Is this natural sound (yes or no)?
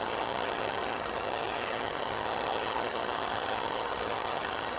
no